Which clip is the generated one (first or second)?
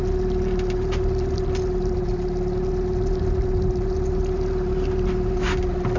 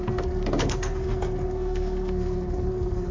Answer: second